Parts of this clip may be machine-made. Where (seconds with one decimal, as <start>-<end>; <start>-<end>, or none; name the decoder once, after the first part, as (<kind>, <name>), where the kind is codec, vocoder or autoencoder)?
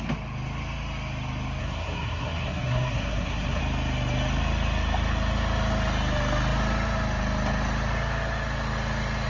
1.6-3.6 (codec, SNAC)